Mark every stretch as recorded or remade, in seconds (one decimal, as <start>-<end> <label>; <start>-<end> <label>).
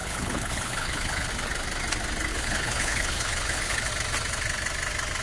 0.0-1.3 remade; 1.3-2.3 recorded; 2.3-3.9 remade; 3.9-5.2 recorded